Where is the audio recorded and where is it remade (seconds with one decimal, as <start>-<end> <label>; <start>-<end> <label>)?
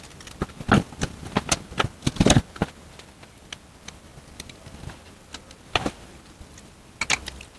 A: 0.0-7.6 recorded